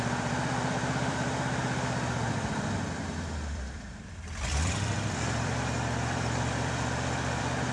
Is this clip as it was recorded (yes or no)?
no